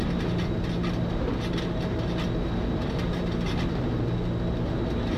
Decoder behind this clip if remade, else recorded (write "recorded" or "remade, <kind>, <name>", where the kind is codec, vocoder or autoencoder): recorded